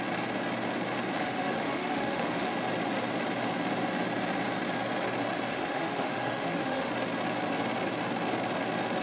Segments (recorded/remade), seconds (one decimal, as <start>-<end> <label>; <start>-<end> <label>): 0.0-1.2 recorded; 1.2-2.5 remade; 2.5-5.5 recorded; 5.5-6.9 remade; 6.9-9.0 recorded